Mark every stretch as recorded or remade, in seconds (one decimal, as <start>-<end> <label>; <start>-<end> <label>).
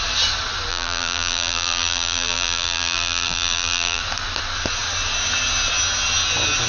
0.0-0.7 recorded; 0.7-4.0 remade; 4.0-6.7 recorded